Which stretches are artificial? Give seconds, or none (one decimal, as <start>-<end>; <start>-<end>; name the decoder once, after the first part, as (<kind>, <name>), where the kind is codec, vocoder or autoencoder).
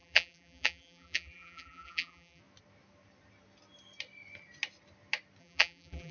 0.0-2.4 (vocoder, BigVGAN v2); 5.4-6.1